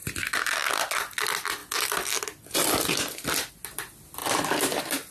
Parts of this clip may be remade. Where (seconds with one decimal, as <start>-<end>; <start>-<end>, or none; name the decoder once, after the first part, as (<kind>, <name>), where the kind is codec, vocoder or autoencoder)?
none